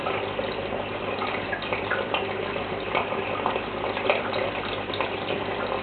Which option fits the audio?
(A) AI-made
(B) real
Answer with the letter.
B